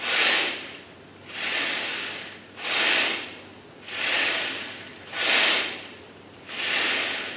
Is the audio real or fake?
real